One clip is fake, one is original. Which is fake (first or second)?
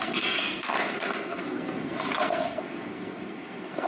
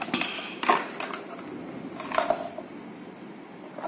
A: first